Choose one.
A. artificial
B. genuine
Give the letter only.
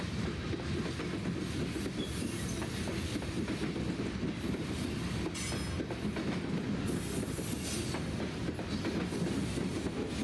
B